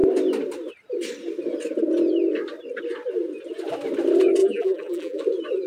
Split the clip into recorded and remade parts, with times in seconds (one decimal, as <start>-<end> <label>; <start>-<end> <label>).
0.0-4.4 recorded; 4.4-5.2 remade; 5.2-5.7 recorded